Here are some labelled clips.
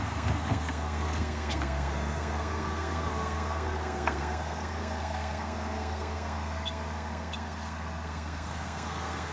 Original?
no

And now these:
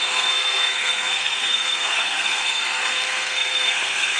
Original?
no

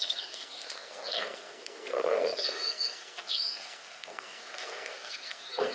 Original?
no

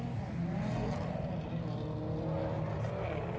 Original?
yes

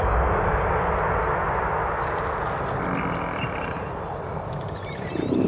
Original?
yes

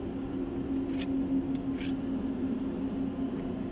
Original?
yes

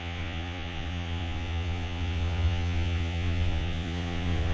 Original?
no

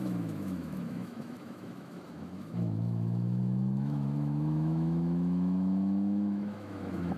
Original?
no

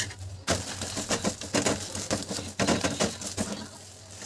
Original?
yes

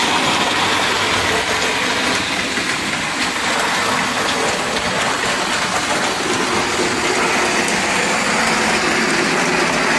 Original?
yes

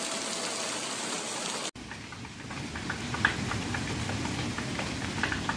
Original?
yes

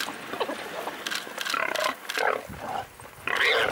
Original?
yes